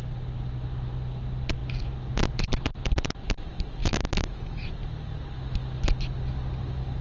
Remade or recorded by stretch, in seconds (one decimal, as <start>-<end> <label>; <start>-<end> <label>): 0.0-3.8 recorded; 3.8-4.6 remade; 4.6-7.0 recorded